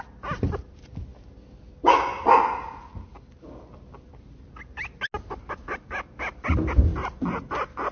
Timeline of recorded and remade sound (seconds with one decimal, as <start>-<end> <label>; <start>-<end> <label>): 0.0-7.9 recorded